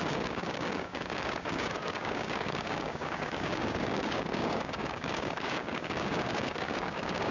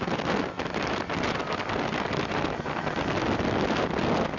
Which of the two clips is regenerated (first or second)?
first